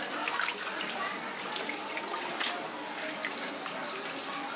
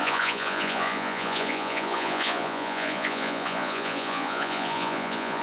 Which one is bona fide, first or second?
first